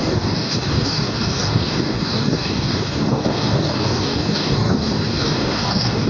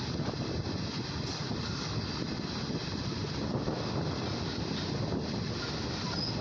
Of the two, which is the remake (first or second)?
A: first